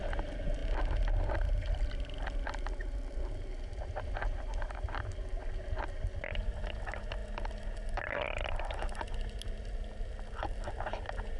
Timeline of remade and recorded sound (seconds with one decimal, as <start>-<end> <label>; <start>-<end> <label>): 0.0-11.4 recorded